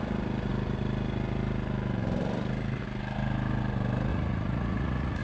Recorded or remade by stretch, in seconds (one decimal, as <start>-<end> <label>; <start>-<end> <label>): 0.0-4.1 recorded; 4.1-5.2 remade